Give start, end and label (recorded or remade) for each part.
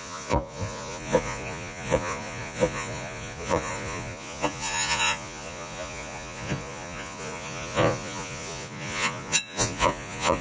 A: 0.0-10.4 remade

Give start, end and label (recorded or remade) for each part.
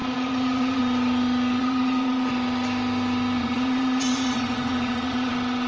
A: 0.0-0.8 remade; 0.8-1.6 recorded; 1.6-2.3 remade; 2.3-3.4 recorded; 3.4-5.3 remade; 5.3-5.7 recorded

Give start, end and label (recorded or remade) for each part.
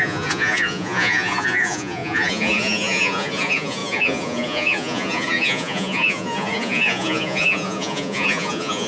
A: 0.0-8.9 remade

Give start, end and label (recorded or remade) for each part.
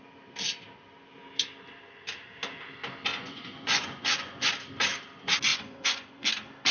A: 0.0-3.1 recorded; 3.1-4.5 remade; 4.5-5.5 recorded; 5.5-6.3 remade; 6.3-6.7 recorded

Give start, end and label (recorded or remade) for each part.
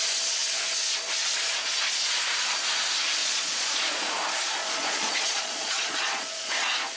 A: 0.0-1.6 recorded; 1.6-2.2 remade; 2.2-3.2 recorded; 3.2-4.1 remade; 4.1-4.6 recorded; 4.6-6.5 remade; 6.5-7.0 recorded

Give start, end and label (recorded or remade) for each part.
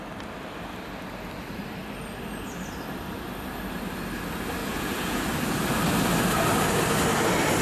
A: 0.0-4.6 recorded; 4.6-5.2 remade; 5.2-7.6 recorded